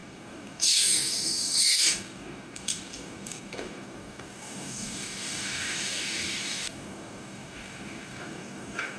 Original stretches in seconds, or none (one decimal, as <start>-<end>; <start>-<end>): none